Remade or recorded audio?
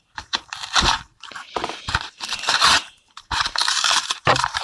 remade